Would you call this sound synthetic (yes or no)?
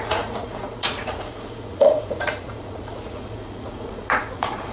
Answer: yes